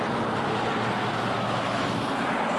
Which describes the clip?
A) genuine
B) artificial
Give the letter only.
A